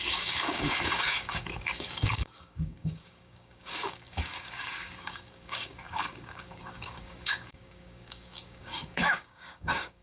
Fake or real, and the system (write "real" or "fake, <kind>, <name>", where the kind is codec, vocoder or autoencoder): fake, codec, DAC